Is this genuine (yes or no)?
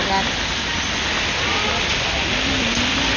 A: yes